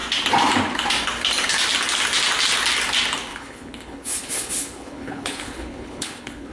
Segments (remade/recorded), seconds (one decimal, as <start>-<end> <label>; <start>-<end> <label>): 0.0-3.3 recorded; 3.3-6.5 remade